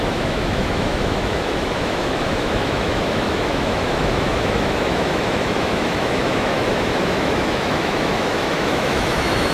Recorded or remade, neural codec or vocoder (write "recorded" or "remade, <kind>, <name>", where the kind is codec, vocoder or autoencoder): remade, autoencoder, DAC-VAE